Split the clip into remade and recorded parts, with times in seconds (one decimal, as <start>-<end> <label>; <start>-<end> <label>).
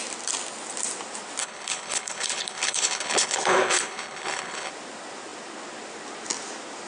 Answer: 0.0-1.4 recorded; 1.4-4.7 remade; 4.7-6.9 recorded